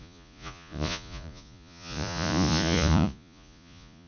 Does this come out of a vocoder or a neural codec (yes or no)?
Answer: yes